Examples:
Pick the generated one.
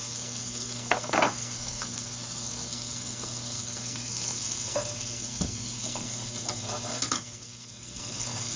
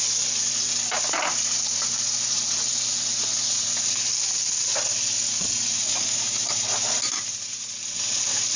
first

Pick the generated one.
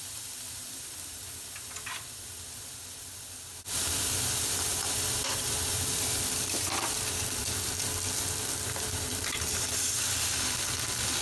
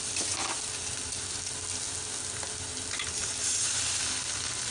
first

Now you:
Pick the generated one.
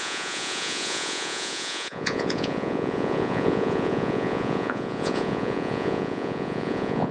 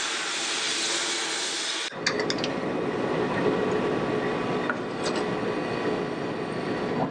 first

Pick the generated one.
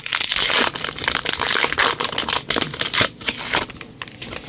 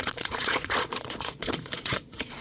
second